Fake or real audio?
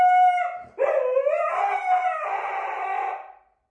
real